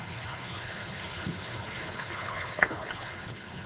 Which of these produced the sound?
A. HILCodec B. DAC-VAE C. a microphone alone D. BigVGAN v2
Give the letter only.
A